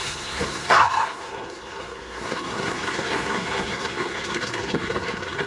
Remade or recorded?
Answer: remade